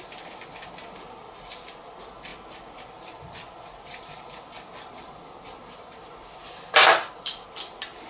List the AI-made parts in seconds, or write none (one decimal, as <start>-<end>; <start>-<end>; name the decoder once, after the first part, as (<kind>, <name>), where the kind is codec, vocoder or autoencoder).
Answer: none